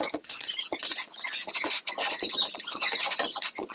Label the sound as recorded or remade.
remade